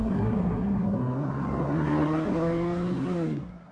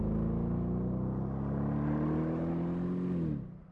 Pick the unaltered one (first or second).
second